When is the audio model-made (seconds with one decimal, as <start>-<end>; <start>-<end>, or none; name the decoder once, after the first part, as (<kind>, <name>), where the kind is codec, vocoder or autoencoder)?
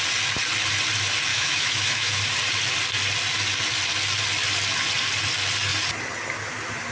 1.3-2.2 (autoencoder, DAC-VAE)